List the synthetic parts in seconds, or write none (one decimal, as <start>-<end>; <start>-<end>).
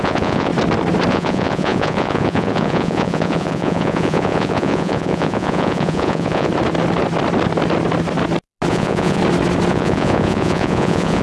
0.0-0.5; 1.1-6.5; 8.7-9.2; 9.7-11.2